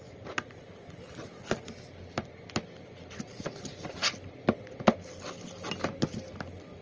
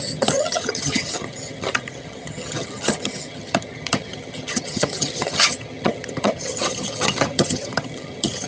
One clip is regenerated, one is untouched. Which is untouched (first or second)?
first